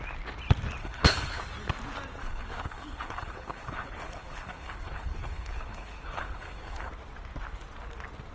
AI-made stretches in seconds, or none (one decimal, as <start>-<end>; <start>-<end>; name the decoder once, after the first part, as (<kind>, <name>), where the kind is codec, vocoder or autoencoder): 0.8-1.4 (codec, HILCodec); 2.2-6.9